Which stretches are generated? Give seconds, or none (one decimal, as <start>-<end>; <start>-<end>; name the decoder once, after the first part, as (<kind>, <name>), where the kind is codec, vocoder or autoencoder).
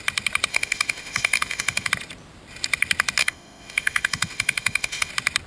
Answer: 0.5-1.9 (autoencoder, DAC-VAE); 3.2-5.1